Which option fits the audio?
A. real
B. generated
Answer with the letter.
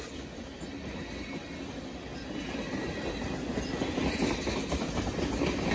A